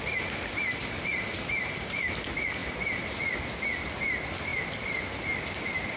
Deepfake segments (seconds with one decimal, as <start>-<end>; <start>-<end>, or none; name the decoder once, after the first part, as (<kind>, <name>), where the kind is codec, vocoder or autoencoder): none